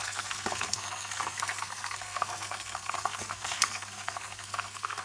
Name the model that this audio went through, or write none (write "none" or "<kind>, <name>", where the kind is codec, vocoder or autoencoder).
codec, SNAC